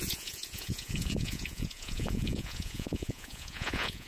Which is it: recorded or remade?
remade